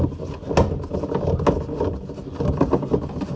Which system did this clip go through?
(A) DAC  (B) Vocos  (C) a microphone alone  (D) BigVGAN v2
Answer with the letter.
C